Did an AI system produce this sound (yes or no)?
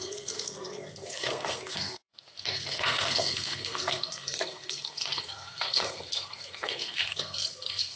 yes